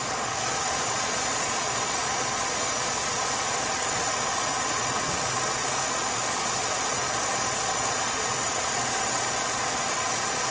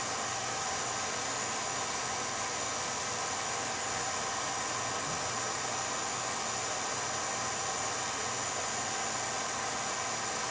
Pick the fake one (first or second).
first